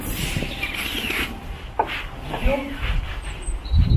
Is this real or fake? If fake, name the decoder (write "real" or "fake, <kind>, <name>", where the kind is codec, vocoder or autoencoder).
real